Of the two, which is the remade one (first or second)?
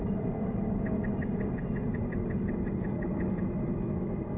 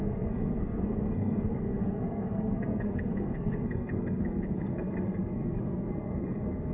second